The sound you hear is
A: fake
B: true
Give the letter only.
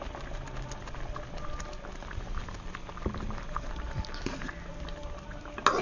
B